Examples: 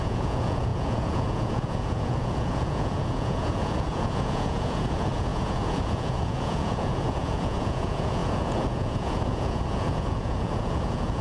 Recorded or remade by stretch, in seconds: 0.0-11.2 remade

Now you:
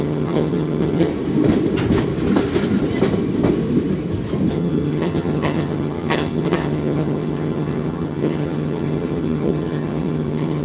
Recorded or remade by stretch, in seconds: 0.0-1.1 remade; 1.1-4.5 recorded; 4.5-10.6 remade

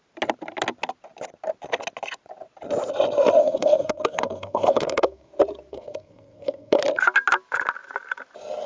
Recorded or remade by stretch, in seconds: 0.0-3.4 recorded; 3.4-5.3 remade; 5.3-5.7 recorded; 5.7-6.8 remade; 6.8-8.7 recorded

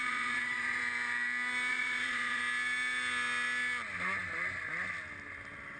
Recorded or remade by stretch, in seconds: 0.0-0.8 remade; 0.8-1.7 recorded; 1.7-2.4 remade; 2.4-5.8 recorded

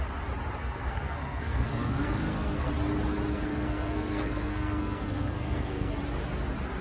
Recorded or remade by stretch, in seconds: 0.0-0.6 recorded; 0.6-2.7 remade; 2.7-3.3 recorded; 3.3-6.0 remade; 6.0-6.8 recorded